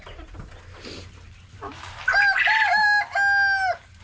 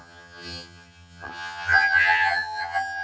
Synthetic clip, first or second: second